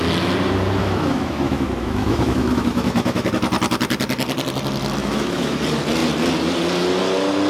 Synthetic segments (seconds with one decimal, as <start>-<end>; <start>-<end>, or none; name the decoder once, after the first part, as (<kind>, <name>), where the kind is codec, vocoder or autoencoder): 0.8-3.3 (autoencoder, DAC-VAE); 5.0-5.6